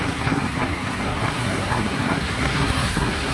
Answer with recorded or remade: remade